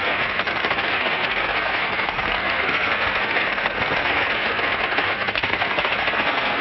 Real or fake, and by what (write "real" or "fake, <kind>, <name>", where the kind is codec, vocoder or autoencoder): fake, codec, SNAC